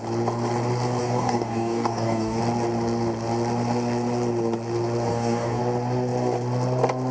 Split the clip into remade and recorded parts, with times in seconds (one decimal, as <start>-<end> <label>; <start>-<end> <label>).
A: 0.0-1.0 recorded; 1.0-2.4 remade; 2.4-5.1 recorded; 5.1-5.6 remade; 5.6-7.1 recorded